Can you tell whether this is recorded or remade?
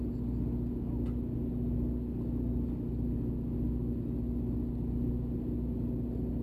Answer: recorded